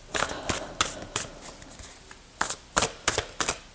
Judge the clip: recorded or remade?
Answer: recorded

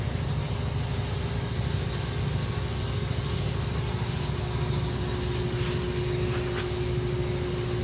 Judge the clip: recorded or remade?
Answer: recorded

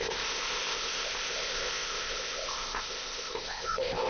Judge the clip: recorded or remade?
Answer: remade